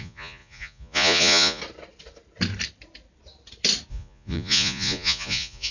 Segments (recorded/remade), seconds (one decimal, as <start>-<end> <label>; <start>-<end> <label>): 0.0-1.6 remade; 1.6-3.9 recorded; 3.9-5.7 remade